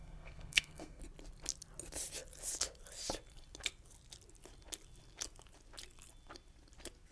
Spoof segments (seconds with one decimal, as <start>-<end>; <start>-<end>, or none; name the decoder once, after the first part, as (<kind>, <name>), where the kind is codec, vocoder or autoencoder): 0.0-1.0 (codec, SNAC)